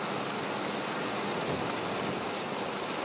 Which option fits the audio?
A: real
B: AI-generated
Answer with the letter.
A